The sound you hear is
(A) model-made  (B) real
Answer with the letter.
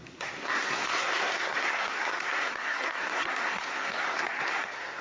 A